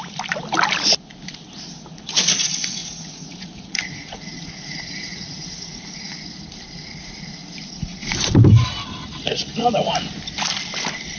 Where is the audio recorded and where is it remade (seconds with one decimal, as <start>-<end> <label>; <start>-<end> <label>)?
0.0-2.8 recorded; 2.8-5.9 remade; 5.9-11.2 recorded